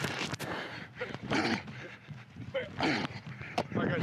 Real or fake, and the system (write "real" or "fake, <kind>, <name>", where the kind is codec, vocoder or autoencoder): fake, vocoder, BigVGAN v2